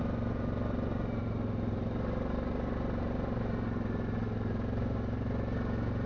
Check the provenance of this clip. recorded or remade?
recorded